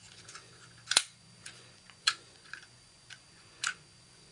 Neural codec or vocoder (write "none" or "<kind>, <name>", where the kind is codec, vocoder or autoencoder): vocoder, Vocos